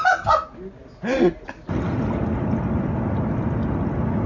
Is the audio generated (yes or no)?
no